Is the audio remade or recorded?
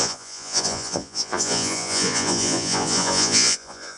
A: remade